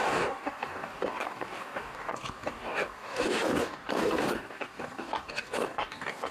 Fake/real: fake